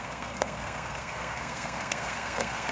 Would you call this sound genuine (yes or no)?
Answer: no